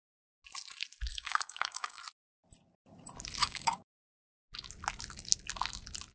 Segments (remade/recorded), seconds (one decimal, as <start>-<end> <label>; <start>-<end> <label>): 0.0-1.1 recorded; 1.1-2.0 remade; 2.0-3.4 recorded; 3.4-3.9 remade; 3.9-6.1 recorded